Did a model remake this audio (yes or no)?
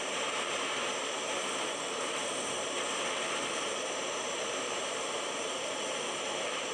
yes